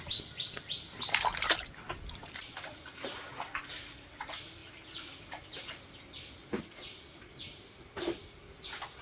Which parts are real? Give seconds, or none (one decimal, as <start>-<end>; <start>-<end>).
0.0-9.0